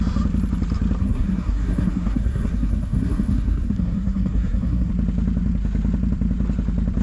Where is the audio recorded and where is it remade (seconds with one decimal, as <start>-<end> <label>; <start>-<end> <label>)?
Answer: 0.0-1.0 recorded; 1.0-4.9 remade; 4.9-7.0 recorded